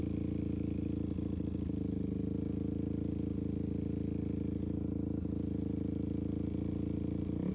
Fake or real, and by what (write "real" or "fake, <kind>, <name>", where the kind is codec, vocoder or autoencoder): real